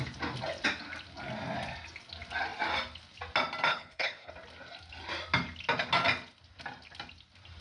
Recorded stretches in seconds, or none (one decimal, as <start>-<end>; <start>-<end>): 0.0-3.7; 4.3-7.6